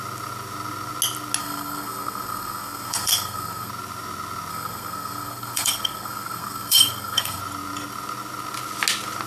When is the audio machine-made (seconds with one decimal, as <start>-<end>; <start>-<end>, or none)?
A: 1.4-3.7; 4.5-7.4